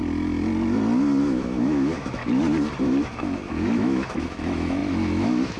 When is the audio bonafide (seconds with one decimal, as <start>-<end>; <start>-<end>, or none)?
0.0-1.2; 2.2-2.8